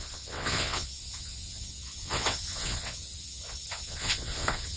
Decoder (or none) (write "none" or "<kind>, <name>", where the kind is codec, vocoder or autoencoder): vocoder, WaveNeXt